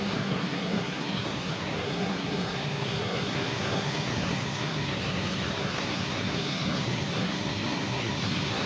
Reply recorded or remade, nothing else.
remade